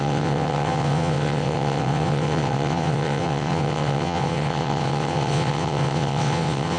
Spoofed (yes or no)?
yes